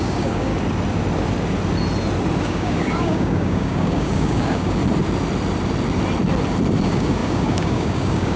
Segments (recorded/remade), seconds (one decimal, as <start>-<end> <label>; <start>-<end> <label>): 0.0-0.5 remade; 0.5-2.4 recorded; 2.4-4.8 remade; 4.8-6.8 recorded; 6.8-8.4 remade